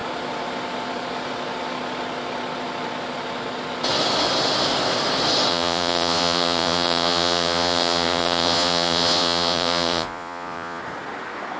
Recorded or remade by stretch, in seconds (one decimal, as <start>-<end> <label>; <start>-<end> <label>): 0.0-5.5 recorded; 5.5-10.8 remade; 10.8-11.6 recorded